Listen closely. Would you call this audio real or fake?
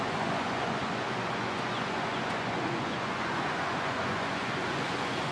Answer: fake